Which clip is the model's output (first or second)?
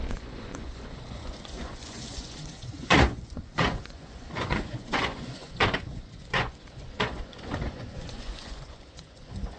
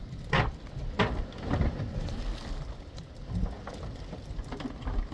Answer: first